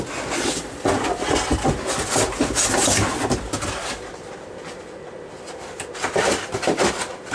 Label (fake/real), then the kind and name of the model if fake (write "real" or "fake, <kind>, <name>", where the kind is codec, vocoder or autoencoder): real